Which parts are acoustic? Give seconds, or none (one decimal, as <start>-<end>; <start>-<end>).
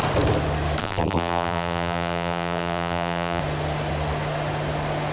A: 0.0-0.8; 3.4-5.1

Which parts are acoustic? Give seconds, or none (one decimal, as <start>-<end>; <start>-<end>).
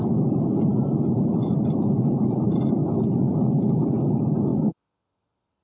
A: 2.8-3.4; 4.5-5.1